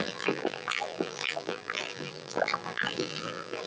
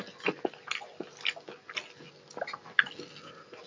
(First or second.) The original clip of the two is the second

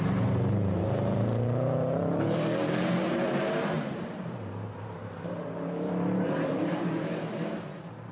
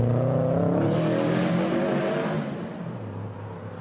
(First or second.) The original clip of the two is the second